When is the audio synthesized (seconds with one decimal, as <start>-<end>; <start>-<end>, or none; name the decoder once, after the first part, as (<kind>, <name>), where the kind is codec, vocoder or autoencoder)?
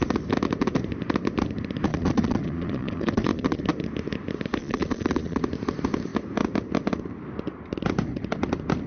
1.9-3.6 (vocoder, Vocos); 4.6-5.4